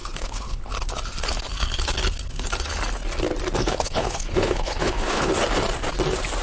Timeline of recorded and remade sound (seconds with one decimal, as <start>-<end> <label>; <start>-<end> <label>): 0.0-0.7 remade; 0.7-3.6 recorded; 3.6-5.3 remade; 5.3-6.4 recorded

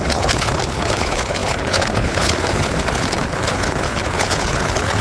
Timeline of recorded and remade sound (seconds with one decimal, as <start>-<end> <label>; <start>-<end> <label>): 0.0-5.0 remade

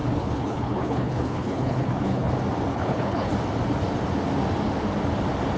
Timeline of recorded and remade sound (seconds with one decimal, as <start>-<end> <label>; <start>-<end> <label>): 0.0-2.3 remade; 2.3-2.7 recorded; 2.7-3.3 remade; 3.3-5.6 recorded

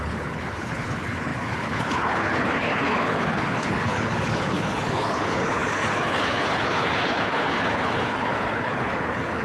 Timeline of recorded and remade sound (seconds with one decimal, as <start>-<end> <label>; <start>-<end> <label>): 0.0-9.4 remade

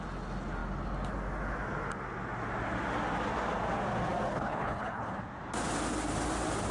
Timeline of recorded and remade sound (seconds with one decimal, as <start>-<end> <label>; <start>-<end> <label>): 0.0-4.3 recorded; 4.3-5.2 remade; 5.2-6.7 recorded

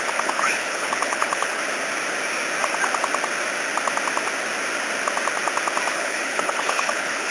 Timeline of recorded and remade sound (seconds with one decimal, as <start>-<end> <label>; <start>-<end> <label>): 0.0-1.6 remade; 1.6-5.9 recorded; 5.9-7.3 remade